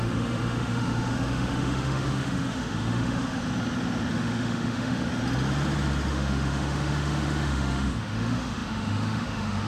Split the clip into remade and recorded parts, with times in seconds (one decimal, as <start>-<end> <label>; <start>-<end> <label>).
0.0-3.4 remade; 3.4-4.1 recorded; 4.1-5.1 remade; 5.1-6.1 recorded; 6.1-9.7 remade